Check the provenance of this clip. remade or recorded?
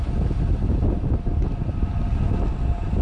recorded